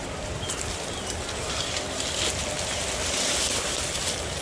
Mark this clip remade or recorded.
recorded